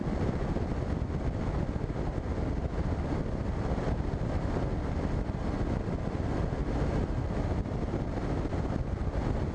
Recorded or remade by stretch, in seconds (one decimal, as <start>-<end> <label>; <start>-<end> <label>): 0.0-9.5 recorded